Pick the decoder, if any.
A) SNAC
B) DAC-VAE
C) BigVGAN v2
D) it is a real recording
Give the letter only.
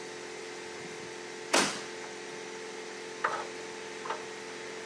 D